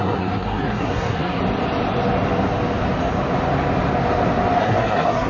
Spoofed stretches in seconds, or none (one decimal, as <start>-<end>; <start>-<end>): 0.0-1.4; 4.6-5.3